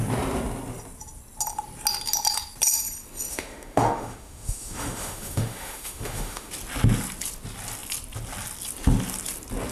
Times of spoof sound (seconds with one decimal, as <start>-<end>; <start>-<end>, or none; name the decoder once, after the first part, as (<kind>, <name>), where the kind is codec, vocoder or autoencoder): 3.3-6.5 (autoencoder, DAC-VAE)